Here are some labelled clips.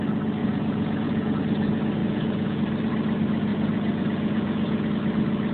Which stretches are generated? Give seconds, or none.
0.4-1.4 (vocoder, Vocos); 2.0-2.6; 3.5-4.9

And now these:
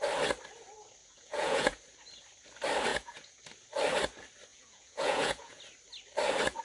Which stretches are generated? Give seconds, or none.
1.0-1.8 (vocoder, Vocos); 2.9-3.4; 4.5-5.6

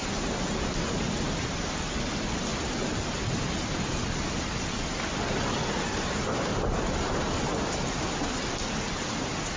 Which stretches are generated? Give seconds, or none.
none